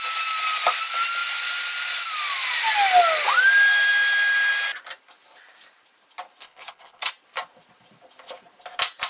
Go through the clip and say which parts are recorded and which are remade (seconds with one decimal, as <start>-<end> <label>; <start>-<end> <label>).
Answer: 0.0-6.4 recorded; 6.4-7.1 remade; 7.1-9.1 recorded